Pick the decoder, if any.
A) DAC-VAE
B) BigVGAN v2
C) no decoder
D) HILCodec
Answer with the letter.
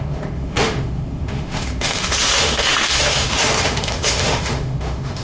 A